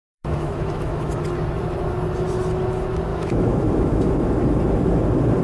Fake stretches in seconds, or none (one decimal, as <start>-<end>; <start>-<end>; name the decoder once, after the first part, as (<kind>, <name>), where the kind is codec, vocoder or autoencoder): 0.0-1.2 (autoencoder, DAC-VAE); 3.1-4.1